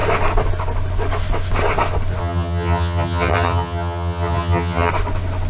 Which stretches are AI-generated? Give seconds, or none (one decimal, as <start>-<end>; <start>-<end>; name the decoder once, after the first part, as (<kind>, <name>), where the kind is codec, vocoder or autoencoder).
2.2-4.9 (vocoder, HiFi-GAN)